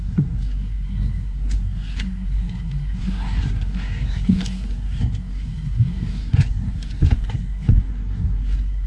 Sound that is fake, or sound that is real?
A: fake